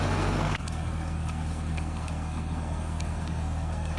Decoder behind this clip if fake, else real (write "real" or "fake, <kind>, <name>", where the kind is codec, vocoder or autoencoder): fake, codec, SNAC